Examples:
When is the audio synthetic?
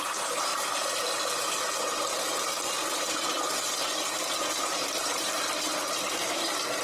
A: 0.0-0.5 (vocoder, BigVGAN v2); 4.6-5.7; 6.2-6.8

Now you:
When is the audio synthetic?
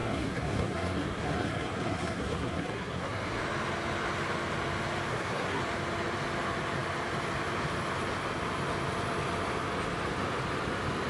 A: 0.0-3.4 (codec, SNAC); 5.1-5.6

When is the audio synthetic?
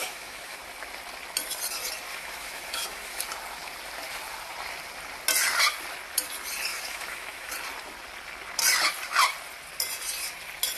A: 0.0-0.6 (autoencoder, DAC-VAE); 2.1-3.2; 6.7-7.5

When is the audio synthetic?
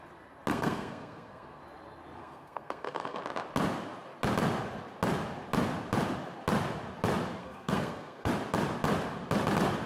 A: 0.5-1.6 (codec, SNAC); 2.2-3.2; 7.4-8.3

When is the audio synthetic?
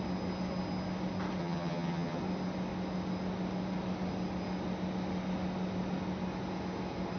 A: 1.4-2.2 (vocoder, HiFi-GAN)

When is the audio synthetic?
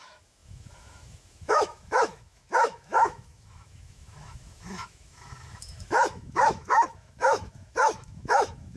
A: 0.0-8.8 (autoencoder, DAC-VAE)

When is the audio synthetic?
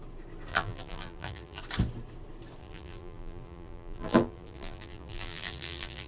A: 0.5-1.6 (vocoder, BigVGAN v2); 2.6-6.1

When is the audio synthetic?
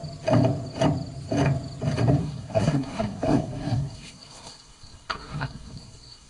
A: 2.2-6.3 (codec, SNAC)